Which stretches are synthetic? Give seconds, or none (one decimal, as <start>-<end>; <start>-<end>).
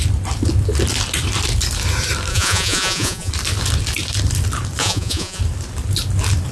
2.3-3.3; 4.8-5.4